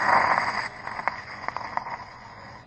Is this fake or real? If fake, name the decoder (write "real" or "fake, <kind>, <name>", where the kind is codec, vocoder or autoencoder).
fake, vocoder, Vocos